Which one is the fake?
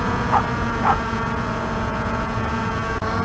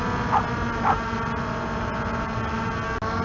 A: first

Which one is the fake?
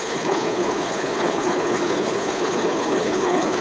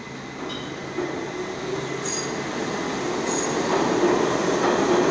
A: first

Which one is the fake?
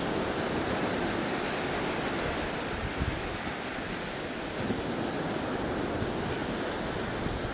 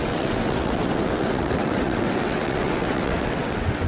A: second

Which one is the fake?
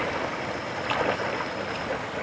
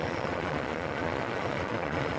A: second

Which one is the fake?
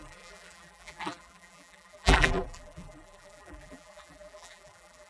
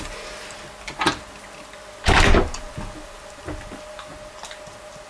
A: first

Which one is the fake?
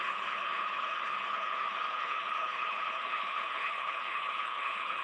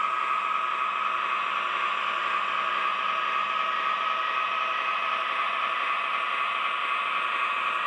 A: first